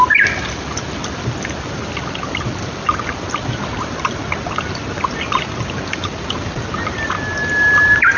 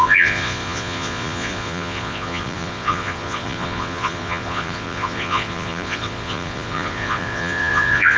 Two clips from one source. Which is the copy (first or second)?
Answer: second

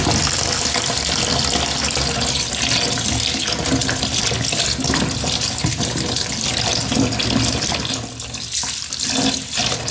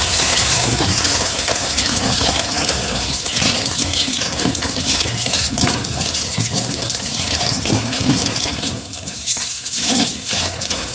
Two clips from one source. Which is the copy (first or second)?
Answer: second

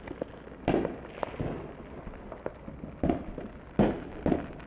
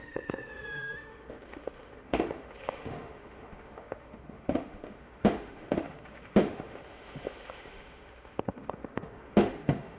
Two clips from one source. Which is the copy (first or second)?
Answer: second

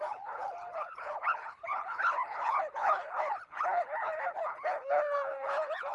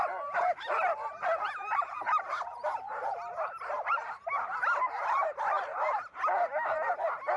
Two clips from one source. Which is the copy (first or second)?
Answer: first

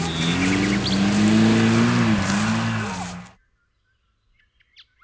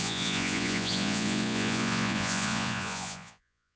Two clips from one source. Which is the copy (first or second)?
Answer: second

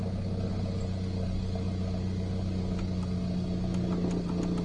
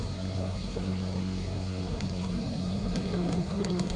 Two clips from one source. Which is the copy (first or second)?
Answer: second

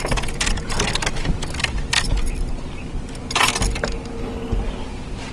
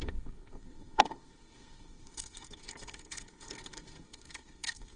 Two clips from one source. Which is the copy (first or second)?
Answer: second